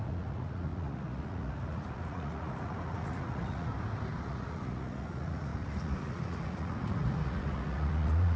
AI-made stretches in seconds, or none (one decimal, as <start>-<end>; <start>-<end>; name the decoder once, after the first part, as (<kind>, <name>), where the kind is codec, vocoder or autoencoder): 0.0-3.7 (vocoder, Vocos); 4.2-8.4